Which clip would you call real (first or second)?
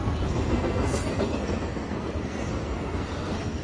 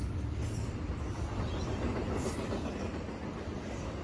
second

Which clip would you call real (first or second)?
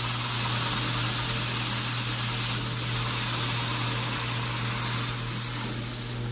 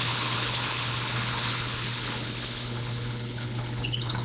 first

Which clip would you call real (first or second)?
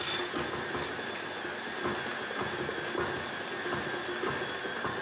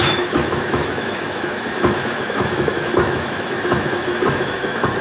first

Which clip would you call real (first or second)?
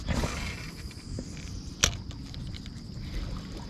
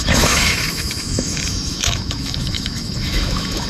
first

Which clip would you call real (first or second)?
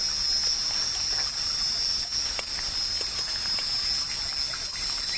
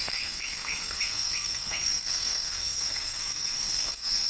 first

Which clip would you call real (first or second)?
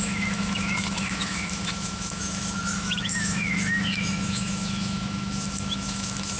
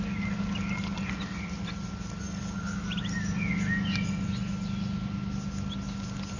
second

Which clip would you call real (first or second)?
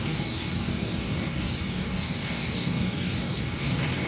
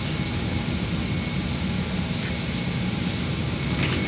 second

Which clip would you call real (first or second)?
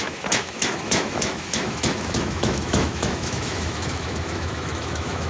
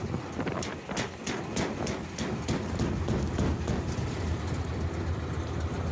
second